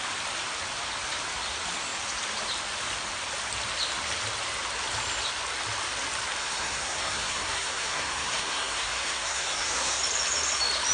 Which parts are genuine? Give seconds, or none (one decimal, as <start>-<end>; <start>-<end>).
0.0-6.4; 10.0-10.9